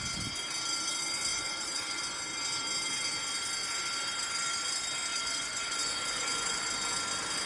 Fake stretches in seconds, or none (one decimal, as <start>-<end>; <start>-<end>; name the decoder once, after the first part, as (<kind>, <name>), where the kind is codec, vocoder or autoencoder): 1.3-2.0 (vocoder, Vocos); 5.1-6.6

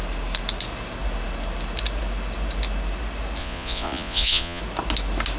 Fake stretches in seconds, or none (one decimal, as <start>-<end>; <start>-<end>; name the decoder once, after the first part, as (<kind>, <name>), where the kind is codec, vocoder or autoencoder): 3.4-4.6 (vocoder, Vocos)